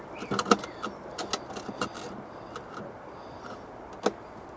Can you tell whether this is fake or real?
real